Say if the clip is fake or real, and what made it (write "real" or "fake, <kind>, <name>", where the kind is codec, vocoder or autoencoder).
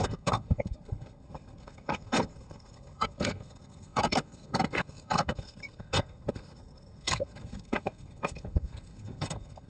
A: fake, codec, SNAC